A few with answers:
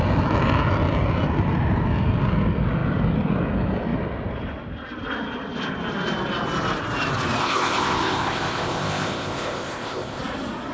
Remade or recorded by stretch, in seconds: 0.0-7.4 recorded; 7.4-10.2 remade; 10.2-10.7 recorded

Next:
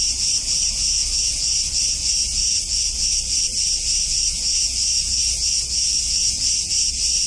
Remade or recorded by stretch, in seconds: 0.0-7.3 recorded

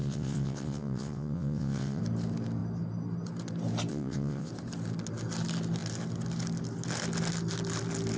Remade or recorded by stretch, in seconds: 0.0-2.0 remade; 2.0-3.9 recorded; 3.9-4.5 remade; 4.5-8.2 recorded

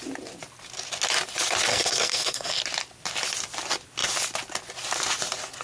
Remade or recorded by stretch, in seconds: 0.0-1.7 recorded; 1.7-2.6 remade; 2.6-5.6 recorded